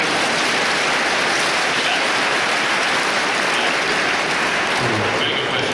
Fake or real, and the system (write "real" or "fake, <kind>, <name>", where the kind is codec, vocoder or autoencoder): real